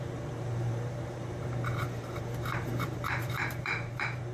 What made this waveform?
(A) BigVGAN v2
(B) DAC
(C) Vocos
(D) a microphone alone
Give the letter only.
A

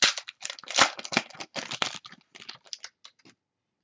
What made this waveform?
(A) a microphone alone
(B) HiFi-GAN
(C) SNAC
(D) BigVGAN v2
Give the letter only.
A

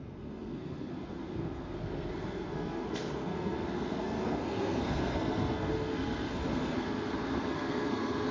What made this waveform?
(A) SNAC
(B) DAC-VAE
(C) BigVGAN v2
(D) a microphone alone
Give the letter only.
A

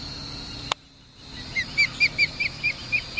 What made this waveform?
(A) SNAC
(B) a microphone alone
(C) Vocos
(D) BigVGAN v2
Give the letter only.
B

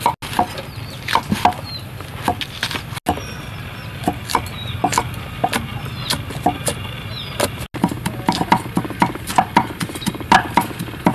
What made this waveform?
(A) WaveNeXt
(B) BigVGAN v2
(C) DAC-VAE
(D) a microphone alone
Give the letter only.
D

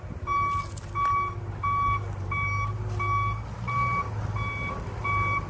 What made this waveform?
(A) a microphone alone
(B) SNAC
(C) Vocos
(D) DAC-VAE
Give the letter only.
A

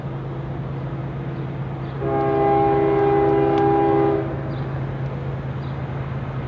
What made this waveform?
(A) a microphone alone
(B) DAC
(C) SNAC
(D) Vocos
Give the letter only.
A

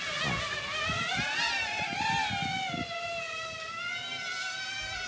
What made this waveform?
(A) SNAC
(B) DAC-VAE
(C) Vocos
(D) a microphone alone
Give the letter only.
D